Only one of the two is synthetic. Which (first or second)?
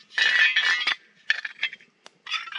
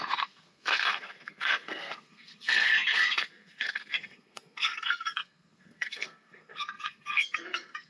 second